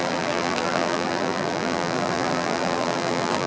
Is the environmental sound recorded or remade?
remade